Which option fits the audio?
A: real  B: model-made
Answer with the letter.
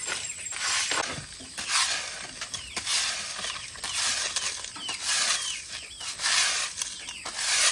A